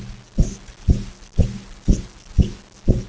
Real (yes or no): yes